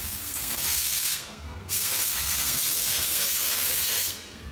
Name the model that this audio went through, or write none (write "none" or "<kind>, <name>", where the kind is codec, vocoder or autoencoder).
codec, SNAC